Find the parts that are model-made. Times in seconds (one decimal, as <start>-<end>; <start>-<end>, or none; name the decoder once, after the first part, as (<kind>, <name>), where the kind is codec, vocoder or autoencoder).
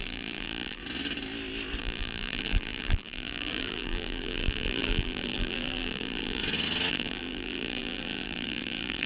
0.0-0.8 (vocoder, BigVGAN v2); 1.8-6.4; 6.9-9.1